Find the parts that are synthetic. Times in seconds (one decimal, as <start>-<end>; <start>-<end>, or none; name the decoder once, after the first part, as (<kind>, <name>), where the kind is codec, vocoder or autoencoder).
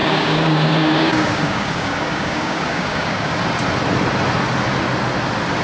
0.0-3.4 (codec, DAC)